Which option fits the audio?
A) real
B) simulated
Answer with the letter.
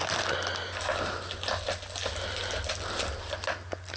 A